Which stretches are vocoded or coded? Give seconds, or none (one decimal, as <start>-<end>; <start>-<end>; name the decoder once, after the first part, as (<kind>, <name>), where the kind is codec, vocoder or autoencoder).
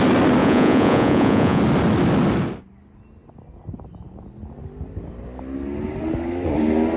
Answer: 0.4-1.6 (vocoder, Vocos)